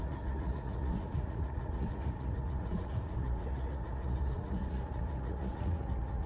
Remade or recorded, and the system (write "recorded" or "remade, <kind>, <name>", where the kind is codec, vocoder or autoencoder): remade, vocoder, Vocos